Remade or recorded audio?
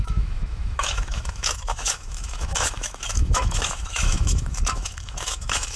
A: remade